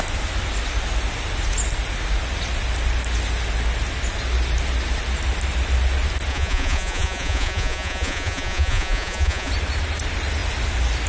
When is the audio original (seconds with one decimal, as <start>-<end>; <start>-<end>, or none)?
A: 0.0-6.3; 9.5-11.1